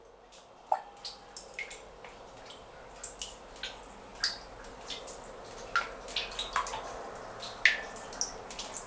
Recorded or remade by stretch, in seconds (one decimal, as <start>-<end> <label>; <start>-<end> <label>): 0.0-8.9 recorded